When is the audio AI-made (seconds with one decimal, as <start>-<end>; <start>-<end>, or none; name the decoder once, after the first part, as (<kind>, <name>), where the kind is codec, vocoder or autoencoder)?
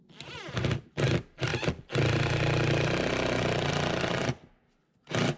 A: none